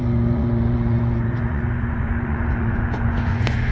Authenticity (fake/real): fake